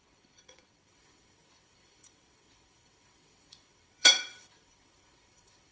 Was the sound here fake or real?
fake